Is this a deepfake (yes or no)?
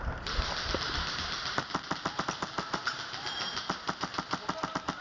no